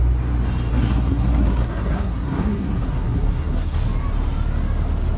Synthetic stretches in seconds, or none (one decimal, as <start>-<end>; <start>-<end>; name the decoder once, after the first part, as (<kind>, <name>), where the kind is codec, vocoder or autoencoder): 0.7-3.8 (codec, SNAC)